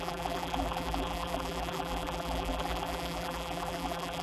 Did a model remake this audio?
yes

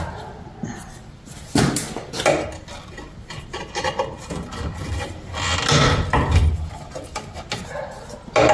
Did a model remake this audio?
no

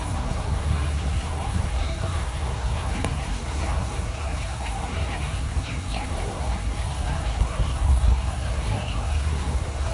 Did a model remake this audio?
yes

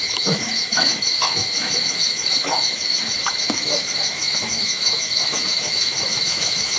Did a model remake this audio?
yes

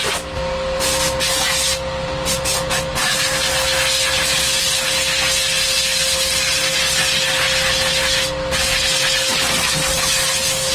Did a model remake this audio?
no